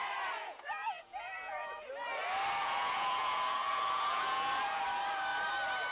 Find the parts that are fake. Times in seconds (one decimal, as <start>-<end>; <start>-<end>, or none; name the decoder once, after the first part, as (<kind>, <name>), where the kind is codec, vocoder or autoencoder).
0.4-1.9 (vocoder, Vocos); 2.6-4.8

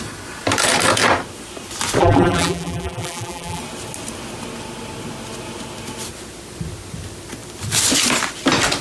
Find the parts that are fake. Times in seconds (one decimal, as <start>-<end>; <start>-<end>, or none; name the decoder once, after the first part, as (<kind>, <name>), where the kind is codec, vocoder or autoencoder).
2.0-3.6 (vocoder, BigVGAN v2)

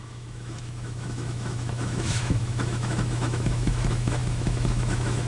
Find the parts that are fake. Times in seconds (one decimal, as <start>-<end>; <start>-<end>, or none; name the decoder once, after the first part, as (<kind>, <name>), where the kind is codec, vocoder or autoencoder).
0.0-5.3 (autoencoder, DAC-VAE)

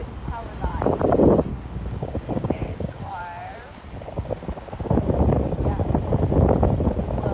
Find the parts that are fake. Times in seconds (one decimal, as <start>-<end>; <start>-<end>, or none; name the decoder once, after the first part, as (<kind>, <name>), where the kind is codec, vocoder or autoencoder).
1.5-2.9 (codec, DAC)

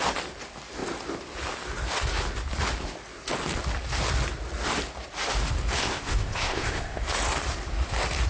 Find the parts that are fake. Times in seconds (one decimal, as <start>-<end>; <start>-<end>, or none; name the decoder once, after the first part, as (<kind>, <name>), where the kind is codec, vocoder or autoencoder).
5.8-7.0 (codec, ZipCodec)